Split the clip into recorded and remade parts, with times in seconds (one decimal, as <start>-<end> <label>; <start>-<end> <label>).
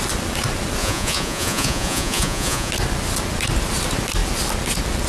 0.0-0.8 recorded; 0.8-2.7 remade; 2.7-5.1 recorded